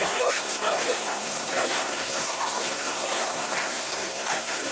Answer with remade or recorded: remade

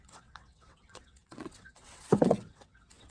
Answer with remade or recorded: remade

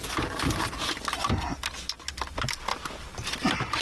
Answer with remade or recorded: recorded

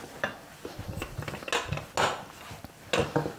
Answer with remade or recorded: recorded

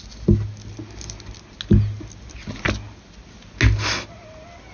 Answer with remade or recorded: recorded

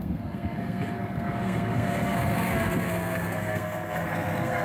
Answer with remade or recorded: remade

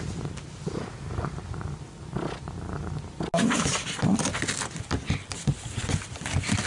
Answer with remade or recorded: recorded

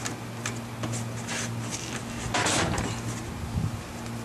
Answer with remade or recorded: recorded